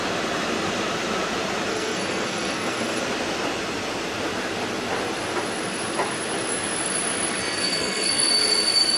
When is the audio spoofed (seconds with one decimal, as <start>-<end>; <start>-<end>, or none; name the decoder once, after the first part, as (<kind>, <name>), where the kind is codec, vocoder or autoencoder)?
1.7-3.0 (codec, SNAC); 7.4-8.3